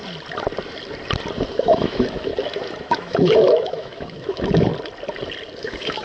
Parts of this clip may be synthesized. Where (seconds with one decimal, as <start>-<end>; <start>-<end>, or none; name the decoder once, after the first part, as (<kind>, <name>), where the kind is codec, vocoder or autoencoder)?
1.5-2.3 (autoencoder, DAC-VAE); 2.9-4.7; 5.6-6.0